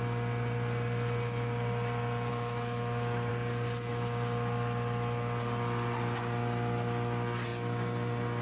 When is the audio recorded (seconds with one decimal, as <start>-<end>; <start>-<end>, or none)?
0.0-2.3; 3.3-8.4